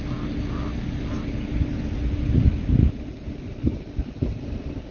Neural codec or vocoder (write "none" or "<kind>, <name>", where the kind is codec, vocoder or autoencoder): none